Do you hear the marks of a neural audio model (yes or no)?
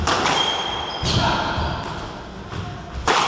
no